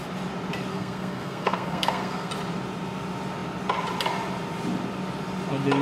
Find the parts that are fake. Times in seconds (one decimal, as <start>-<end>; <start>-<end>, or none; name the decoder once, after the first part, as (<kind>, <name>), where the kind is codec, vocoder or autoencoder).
0.7-2.3 (codec, SNAC)